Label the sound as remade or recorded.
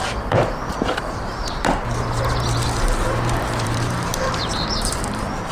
remade